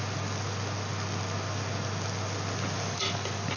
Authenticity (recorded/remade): recorded